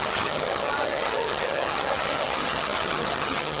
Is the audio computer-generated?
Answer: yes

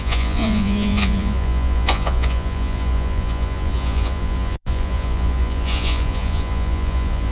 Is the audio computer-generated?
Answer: yes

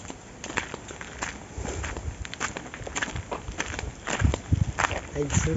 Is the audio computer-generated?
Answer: no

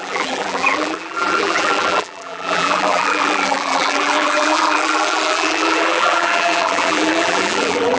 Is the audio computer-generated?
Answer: yes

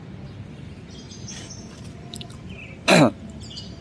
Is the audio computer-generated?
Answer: no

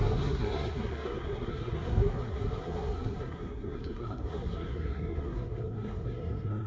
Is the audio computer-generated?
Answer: yes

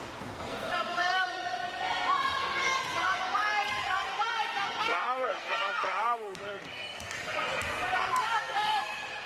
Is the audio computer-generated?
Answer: yes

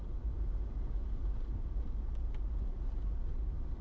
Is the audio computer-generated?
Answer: no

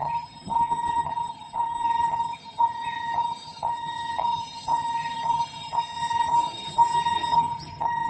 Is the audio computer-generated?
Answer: yes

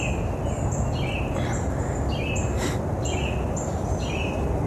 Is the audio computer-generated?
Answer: no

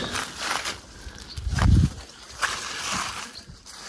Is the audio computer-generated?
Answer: no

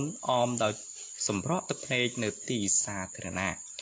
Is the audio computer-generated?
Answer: no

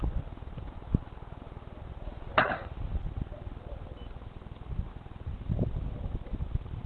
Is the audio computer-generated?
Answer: no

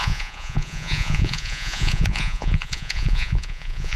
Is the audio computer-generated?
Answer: yes